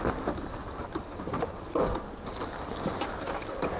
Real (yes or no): yes